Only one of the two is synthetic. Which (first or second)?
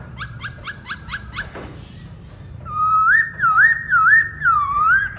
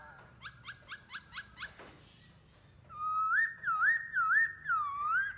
first